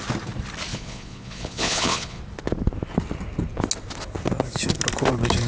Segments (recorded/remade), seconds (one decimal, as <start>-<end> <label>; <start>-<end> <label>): 0.0-0.7 recorded; 0.7-2.2 remade; 2.2-5.5 recorded